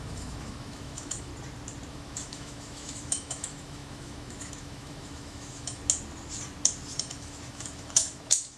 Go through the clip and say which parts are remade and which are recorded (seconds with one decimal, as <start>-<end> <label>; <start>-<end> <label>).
0.0-1.3 remade; 1.3-1.9 recorded; 1.9-5.8 remade; 5.8-7.0 recorded; 7.0-8.6 remade